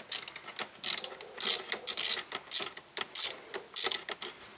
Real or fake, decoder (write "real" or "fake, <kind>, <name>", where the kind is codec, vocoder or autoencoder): real